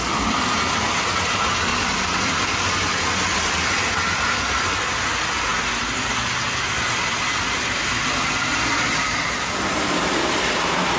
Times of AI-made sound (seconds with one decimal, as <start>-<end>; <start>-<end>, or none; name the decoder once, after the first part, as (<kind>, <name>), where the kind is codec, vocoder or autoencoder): 1.7-2.7 (vocoder, BigVGAN v2)